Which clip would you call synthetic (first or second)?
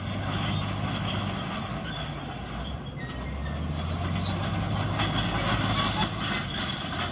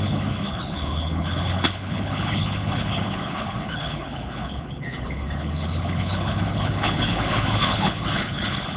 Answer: second